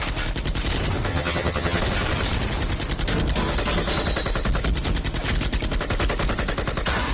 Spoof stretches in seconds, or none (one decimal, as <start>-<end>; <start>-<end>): 1.1-1.8